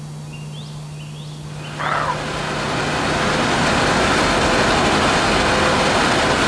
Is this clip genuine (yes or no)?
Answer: yes